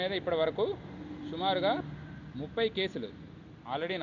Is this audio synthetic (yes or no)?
no